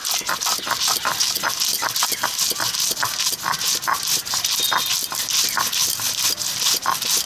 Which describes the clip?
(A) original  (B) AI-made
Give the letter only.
A